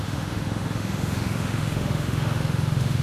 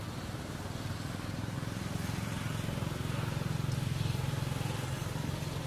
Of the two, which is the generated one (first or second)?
first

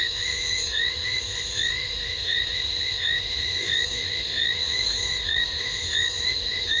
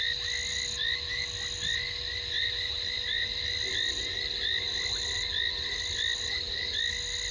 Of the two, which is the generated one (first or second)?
first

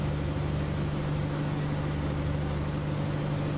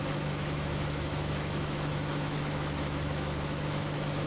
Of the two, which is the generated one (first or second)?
second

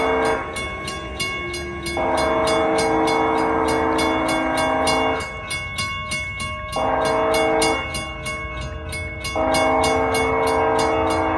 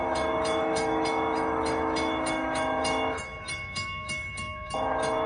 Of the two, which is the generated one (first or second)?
second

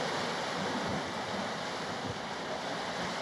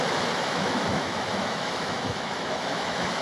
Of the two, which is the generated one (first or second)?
second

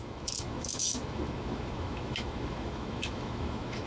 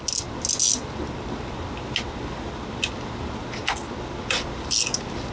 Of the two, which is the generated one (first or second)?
first